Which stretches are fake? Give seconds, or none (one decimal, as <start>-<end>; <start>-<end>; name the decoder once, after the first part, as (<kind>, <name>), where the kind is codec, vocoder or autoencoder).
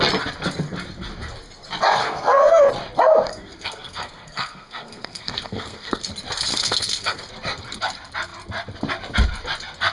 2.0-2.7 (codec, SNAC); 3.3-6.0; 6.5-7.3